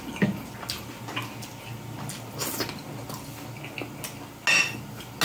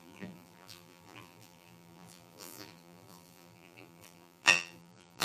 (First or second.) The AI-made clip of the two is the second